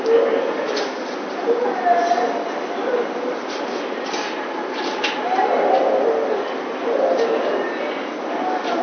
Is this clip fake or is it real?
real